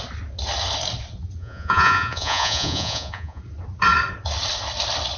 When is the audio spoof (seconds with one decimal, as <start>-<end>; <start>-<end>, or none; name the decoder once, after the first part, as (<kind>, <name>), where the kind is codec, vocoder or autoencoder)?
1.4-3.4 (vocoder, Vocos)